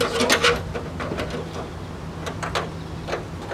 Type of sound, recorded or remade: recorded